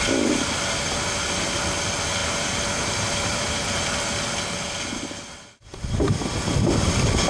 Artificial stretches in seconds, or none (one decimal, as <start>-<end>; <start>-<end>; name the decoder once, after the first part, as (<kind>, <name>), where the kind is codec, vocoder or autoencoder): 2.2-3.8 (vocoder, BigVGAN v2)